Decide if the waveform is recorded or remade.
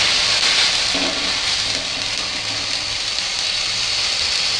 recorded